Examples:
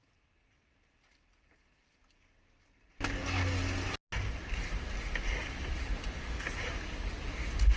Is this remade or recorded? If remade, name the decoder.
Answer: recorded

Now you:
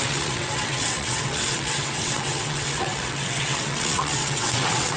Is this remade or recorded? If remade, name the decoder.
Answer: remade, vocoder, WaveNeXt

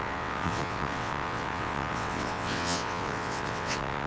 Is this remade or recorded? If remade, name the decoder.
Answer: remade, vocoder, WaveNeXt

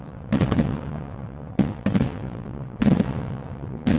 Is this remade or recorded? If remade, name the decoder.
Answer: remade, vocoder, WaveNeXt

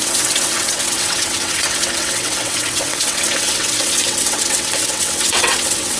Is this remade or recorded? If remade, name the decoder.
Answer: remade, vocoder, WaveNeXt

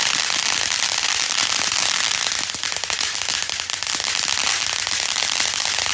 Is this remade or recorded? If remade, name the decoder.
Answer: recorded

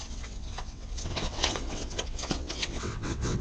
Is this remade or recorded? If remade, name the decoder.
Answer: remade, vocoder, WaveNeXt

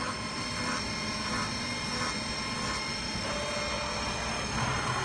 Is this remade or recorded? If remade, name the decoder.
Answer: recorded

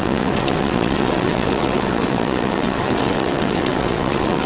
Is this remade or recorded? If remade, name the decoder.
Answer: remade, vocoder, WaveNeXt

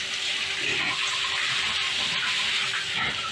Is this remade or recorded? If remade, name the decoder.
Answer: recorded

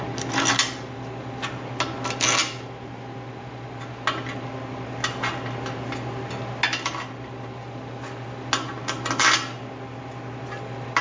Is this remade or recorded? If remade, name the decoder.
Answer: recorded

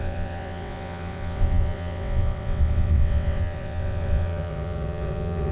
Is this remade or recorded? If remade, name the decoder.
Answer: remade, vocoder, WaveNeXt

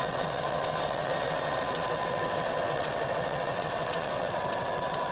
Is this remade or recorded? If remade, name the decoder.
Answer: remade, vocoder, WaveNeXt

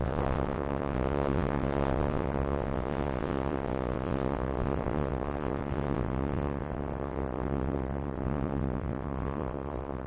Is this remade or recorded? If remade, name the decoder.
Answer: remade, vocoder, WaveNeXt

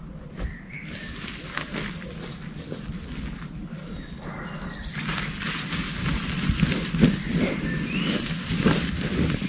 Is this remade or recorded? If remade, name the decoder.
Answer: recorded